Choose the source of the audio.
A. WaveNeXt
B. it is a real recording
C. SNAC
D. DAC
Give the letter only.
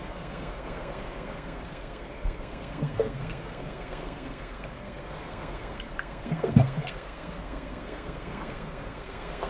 C